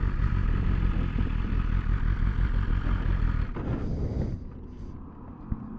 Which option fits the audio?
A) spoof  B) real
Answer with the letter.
B